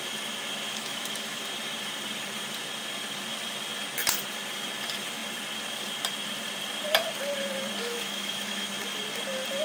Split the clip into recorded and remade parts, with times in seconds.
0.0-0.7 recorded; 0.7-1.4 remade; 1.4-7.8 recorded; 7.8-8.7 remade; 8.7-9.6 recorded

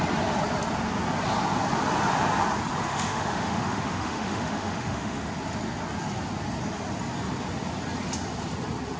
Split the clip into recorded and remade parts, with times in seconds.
0.0-2.9 recorded; 2.9-5.3 remade; 5.3-9.0 recorded

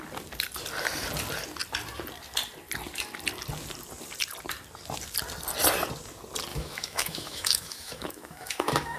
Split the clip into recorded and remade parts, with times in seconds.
0.0-6.5 recorded; 6.5-9.0 remade

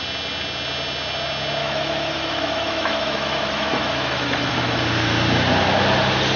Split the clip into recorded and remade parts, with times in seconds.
0.0-1.6 recorded; 1.6-4.8 remade; 4.8-6.4 recorded

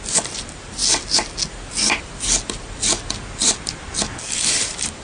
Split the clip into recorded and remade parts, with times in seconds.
0.0-5.0 recorded

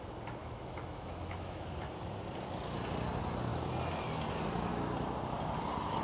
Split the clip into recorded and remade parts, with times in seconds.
0.0-0.4 recorded; 0.4-1.9 remade; 1.9-6.0 recorded

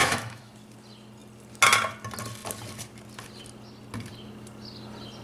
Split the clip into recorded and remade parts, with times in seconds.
0.0-0.5 remade; 0.5-5.2 recorded